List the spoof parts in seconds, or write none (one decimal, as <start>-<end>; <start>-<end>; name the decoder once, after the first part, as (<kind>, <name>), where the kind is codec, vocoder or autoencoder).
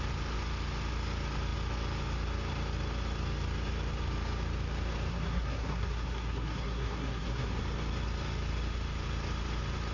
5.1-7.6 (codec, SNAC)